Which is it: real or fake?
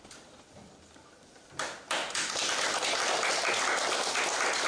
real